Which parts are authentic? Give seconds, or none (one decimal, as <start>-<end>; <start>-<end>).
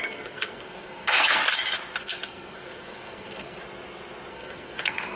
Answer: 1.4-2.0; 3.6-4.3